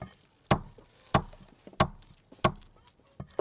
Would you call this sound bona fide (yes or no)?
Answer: yes